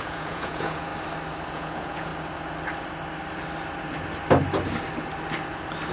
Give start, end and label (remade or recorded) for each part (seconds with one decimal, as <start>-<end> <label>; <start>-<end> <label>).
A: 0.0-0.9 remade; 0.9-1.5 recorded; 1.5-2.1 remade; 2.1-5.9 recorded

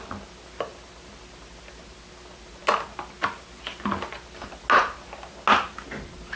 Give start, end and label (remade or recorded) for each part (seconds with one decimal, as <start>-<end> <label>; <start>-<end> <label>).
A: 0.0-6.4 recorded

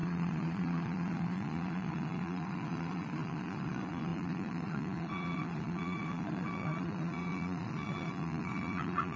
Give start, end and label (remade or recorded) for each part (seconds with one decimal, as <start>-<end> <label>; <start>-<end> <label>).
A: 0.0-9.2 remade

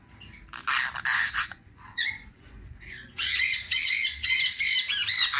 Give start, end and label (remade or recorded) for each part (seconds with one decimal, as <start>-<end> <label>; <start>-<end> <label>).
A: 0.0-1.1 recorded; 1.1-4.3 remade; 4.3-5.4 recorded

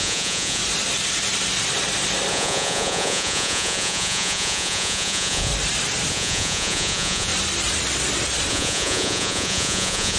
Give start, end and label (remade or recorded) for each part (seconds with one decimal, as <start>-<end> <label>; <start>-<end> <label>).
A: 0.0-0.6 remade; 0.6-2.3 recorded; 2.3-5.5 remade; 5.5-6.1 recorded; 6.1-7.3 remade; 7.3-8.5 recorded; 8.5-10.2 remade

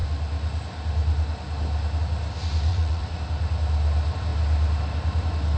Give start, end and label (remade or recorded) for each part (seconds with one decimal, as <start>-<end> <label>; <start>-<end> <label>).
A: 0.0-2.7 recorded; 2.7-3.2 remade; 3.2-5.6 recorded